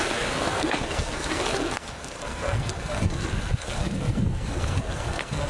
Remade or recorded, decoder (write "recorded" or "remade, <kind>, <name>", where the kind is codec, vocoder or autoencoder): remade, codec, SNAC